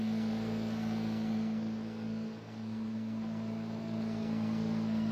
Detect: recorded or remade remade